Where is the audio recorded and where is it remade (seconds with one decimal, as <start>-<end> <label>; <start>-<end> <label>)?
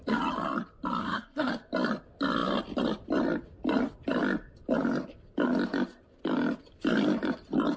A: 0.0-1.0 recorded; 1.0-1.5 remade; 1.5-7.8 recorded